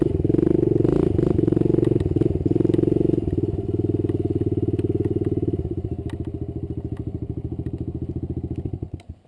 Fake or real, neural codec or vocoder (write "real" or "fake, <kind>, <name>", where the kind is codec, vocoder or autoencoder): real